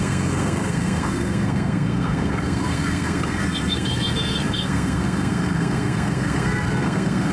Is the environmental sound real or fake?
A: fake